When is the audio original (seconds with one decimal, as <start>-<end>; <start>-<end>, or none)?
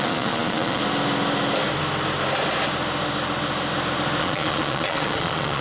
0.8-4.2